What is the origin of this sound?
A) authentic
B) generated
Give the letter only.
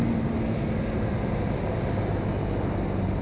A